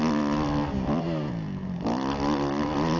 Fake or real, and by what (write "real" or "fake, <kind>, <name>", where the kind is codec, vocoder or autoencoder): real